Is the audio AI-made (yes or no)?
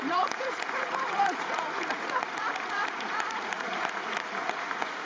yes